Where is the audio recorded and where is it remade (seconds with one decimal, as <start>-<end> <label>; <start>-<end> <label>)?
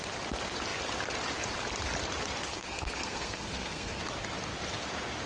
0.0-2.5 recorded; 2.5-4.0 remade; 4.0-5.3 recorded